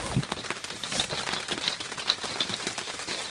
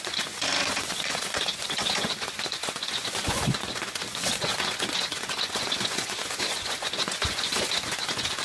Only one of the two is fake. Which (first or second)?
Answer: second